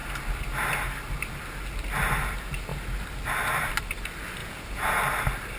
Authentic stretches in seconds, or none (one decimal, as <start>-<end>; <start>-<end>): 0.0-4.4; 5.0-5.6